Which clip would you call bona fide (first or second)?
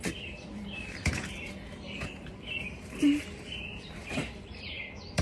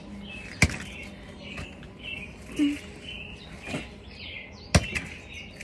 second